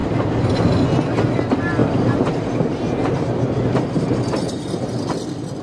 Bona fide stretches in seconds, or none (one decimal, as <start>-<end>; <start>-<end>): 0.6-1.8; 5.0-5.6